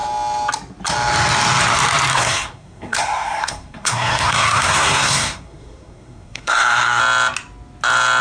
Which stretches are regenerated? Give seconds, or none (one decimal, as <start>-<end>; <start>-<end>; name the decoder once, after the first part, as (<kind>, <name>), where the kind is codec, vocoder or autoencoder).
2.1-7.0 (codec, SNAC)